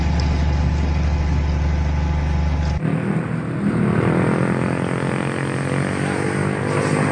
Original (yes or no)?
yes